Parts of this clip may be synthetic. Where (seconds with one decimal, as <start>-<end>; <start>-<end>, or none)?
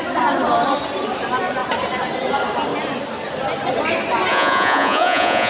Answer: 4.3-5.5